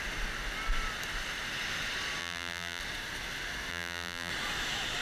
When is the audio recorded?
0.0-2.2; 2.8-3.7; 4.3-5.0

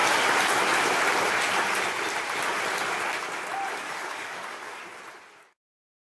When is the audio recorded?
0.0-3.7; 4.8-5.4

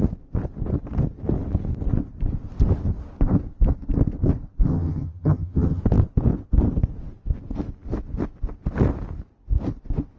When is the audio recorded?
0.0-4.7; 5.8-10.2

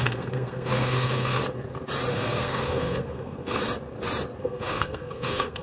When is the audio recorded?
1.4-2.1; 3.6-4.4

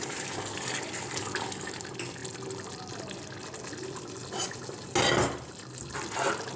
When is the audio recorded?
0.0-6.6

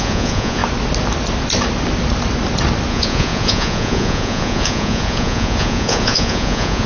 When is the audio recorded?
0.6-2.9